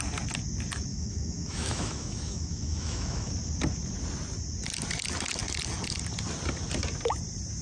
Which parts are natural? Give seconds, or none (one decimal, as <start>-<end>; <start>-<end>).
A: 0.0-0.9; 3.3-7.6

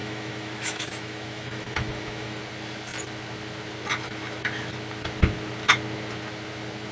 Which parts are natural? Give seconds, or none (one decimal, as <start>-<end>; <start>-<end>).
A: 2.4-6.9